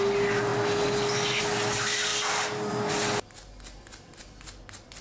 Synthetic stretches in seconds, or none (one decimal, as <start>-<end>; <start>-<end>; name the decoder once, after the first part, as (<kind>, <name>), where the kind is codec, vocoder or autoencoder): none